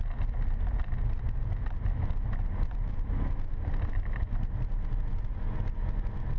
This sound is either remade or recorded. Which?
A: recorded